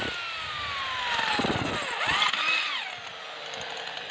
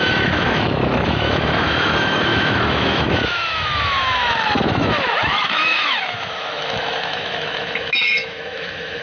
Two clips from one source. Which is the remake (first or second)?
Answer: second